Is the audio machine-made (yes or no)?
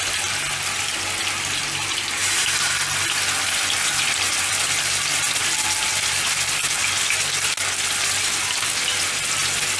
no